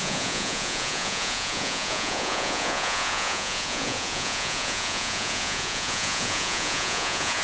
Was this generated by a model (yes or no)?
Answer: yes